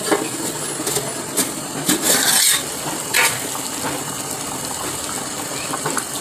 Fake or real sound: real